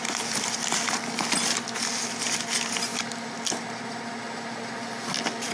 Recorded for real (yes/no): yes